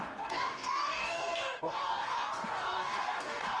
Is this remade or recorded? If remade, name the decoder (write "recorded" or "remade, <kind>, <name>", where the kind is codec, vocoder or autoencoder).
remade, codec, DAC